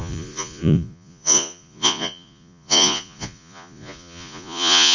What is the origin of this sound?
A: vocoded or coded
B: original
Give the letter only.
A